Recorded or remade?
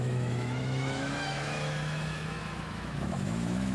remade